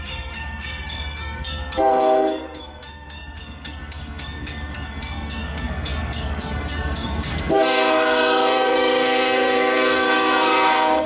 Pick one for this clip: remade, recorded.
remade